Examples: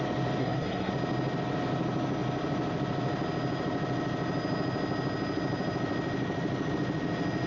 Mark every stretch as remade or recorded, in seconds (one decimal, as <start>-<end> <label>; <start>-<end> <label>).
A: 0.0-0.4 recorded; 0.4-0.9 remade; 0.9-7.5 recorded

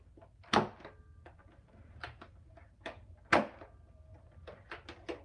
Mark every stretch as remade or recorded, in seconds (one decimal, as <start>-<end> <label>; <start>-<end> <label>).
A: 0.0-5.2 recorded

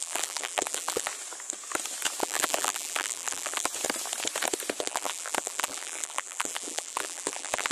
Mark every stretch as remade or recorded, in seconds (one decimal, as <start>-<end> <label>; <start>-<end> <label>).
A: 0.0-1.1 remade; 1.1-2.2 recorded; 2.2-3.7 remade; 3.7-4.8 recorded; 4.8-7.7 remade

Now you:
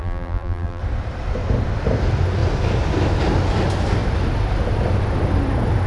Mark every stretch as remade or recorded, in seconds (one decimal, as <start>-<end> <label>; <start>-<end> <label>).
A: 0.0-0.8 remade; 0.8-5.9 recorded

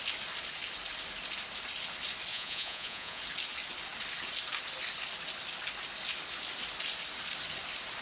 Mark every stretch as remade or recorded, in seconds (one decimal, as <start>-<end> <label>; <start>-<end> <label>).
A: 0.0-2.3 recorded; 2.3-3.2 remade; 3.2-8.0 recorded